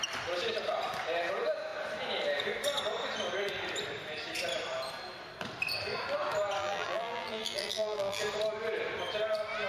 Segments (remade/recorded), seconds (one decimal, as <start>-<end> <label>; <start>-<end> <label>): 0.0-6.6 recorded; 6.6-8.2 remade; 8.2-9.7 recorded